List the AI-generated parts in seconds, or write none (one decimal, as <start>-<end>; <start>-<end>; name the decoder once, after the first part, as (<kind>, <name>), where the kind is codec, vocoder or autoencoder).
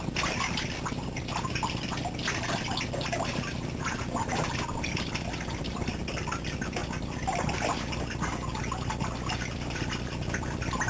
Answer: 0.0-10.9 (vocoder, BigVGAN v2)